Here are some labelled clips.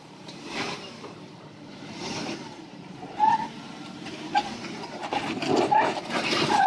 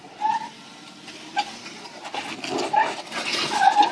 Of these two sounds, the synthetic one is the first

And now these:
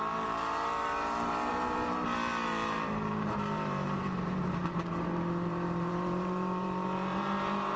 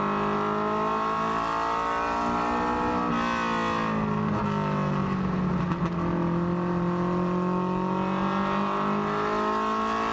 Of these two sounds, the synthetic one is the first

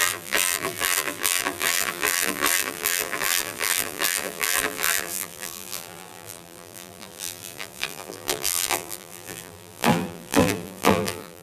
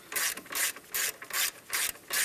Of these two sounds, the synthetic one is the first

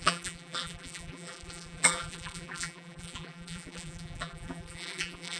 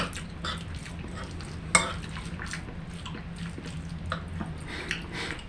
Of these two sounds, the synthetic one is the first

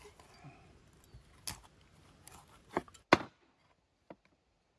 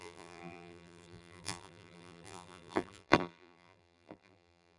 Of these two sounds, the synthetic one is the second